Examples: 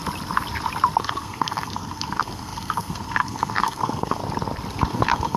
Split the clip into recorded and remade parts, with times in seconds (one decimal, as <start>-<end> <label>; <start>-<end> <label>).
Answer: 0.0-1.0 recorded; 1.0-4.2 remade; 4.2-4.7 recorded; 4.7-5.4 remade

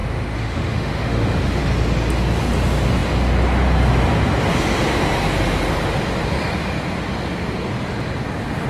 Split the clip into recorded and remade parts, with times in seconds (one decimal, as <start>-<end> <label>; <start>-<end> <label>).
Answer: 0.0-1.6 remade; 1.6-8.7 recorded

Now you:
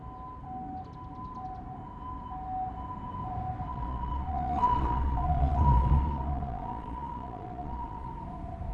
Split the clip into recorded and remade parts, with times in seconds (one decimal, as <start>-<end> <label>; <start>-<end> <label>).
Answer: 0.0-3.7 recorded; 3.7-8.1 remade; 8.1-8.7 recorded

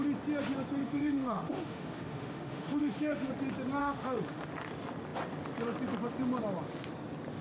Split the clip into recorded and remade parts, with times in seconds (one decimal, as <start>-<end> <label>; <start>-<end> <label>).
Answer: 0.0-0.8 recorded; 0.8-3.3 remade; 3.3-3.8 recorded; 3.8-4.5 remade; 4.5-7.4 recorded

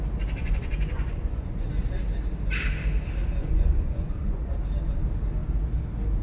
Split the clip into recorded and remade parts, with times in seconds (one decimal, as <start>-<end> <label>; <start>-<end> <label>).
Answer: 0.0-0.4 recorded; 0.4-1.7 remade; 1.7-3.4 recorded; 3.4-4.5 remade; 4.5-6.2 recorded

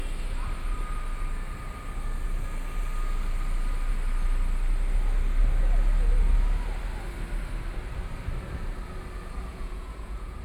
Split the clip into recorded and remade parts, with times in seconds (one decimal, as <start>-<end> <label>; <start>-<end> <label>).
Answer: 0.0-9.5 recorded; 9.5-10.4 remade

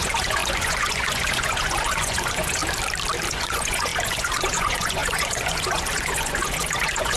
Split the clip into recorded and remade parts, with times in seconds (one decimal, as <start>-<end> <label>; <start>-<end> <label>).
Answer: 0.0-2.6 remade; 2.6-3.3 recorded; 3.3-7.2 remade

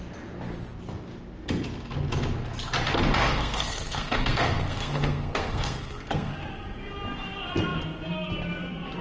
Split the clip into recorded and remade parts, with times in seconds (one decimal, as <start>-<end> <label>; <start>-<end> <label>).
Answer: 0.0-3.2 recorded; 3.2-6.3 remade; 6.3-9.0 recorded